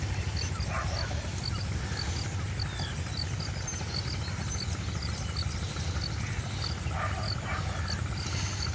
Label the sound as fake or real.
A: real